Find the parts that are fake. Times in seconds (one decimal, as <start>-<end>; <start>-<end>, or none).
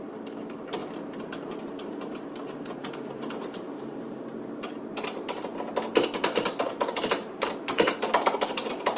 0.0-0.8; 2.8-5.5; 6.5-9.0